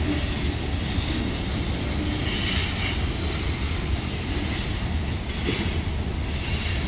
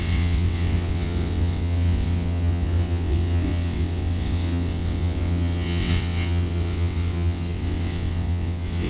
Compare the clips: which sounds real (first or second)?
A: first